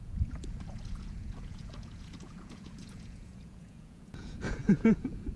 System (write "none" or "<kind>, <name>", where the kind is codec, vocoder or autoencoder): vocoder, Vocos